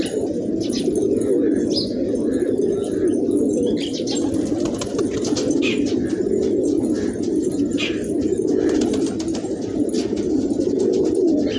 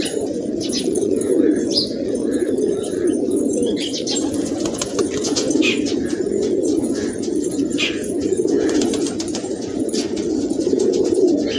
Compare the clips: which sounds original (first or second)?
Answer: first